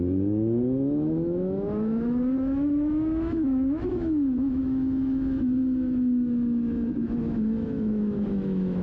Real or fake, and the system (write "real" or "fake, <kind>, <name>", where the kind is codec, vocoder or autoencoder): fake, autoencoder, DAC-VAE